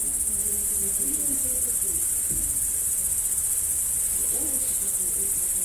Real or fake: real